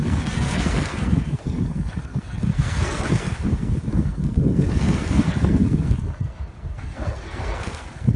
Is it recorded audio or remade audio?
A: remade